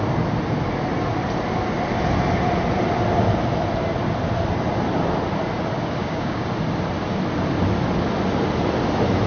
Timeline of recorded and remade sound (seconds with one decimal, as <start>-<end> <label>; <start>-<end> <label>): 0.0-6.0 recorded; 6.0-6.5 remade; 6.5-9.3 recorded